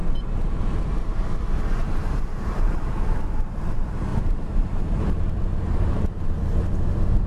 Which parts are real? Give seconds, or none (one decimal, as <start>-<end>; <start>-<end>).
0.0-1.8; 2.9-4.1; 6.1-7.3